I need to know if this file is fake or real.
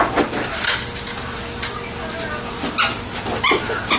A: real